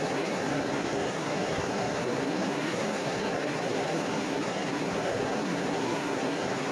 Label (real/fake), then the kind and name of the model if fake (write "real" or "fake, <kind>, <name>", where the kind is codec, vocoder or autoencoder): fake, codec, SNAC